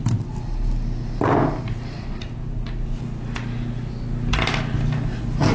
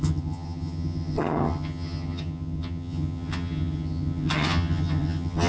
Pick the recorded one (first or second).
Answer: first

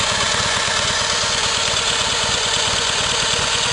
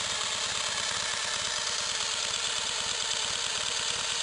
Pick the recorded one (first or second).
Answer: second